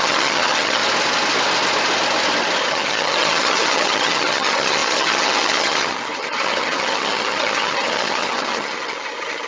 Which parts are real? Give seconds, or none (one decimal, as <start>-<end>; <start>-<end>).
0.8-2.7